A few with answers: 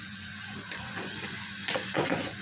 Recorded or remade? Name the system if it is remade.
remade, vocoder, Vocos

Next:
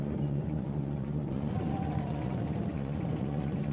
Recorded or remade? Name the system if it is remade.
remade, vocoder, Vocos